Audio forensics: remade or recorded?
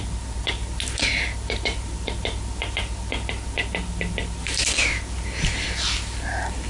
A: recorded